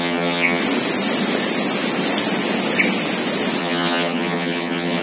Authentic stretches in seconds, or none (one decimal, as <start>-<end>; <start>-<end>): 0.6-3.6